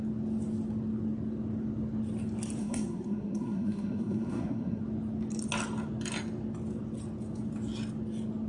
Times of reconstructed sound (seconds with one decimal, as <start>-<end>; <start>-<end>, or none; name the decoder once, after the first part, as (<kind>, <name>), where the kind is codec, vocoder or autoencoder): 2.6-4.8 (codec, SNAC)